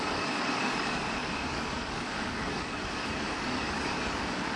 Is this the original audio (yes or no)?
no